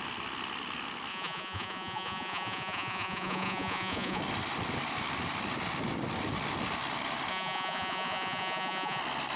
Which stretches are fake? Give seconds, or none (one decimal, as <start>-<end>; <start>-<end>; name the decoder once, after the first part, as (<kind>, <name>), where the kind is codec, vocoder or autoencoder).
1.1-4.2 (vocoder, Vocos); 7.3-9.0